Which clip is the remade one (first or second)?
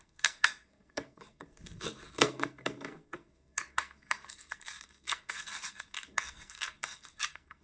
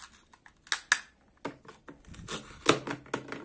first